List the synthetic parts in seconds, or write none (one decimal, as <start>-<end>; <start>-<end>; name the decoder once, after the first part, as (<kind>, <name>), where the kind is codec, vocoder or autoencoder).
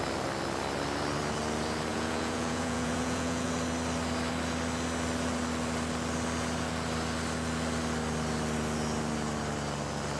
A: 1.9-3.5 (vocoder, Vocos)